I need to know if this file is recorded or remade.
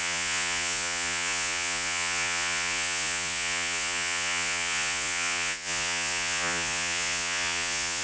remade